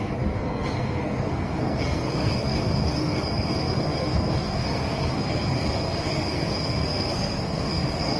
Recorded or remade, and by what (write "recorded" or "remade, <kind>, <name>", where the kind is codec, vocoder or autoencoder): remade, codec, SNAC